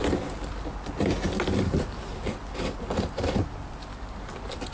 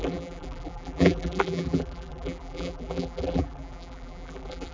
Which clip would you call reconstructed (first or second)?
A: second